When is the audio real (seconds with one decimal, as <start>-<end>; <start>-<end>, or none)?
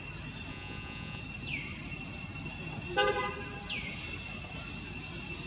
0.0-0.5; 1.2-5.5